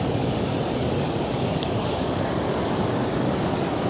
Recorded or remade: remade